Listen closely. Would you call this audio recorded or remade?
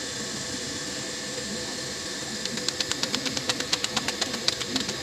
remade